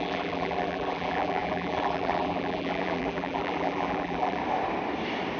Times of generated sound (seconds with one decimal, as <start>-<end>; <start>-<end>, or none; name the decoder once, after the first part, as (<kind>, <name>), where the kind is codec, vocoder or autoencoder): 0.0-4.4 (vocoder, BigVGAN v2)

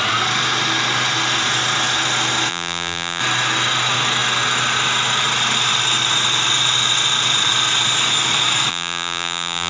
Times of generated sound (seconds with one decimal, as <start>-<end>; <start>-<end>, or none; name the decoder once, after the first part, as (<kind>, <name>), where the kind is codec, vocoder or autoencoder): 2.5-3.2 (vocoder, BigVGAN v2); 8.7-9.7